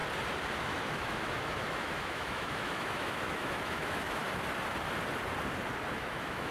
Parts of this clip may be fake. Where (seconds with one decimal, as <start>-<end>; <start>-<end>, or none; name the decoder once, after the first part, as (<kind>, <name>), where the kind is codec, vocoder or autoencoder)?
0.6-4.2 (autoencoder, DAC-VAE); 5.9-6.5